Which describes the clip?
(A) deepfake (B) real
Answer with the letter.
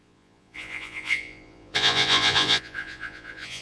A